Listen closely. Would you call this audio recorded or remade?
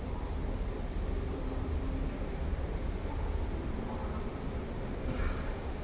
recorded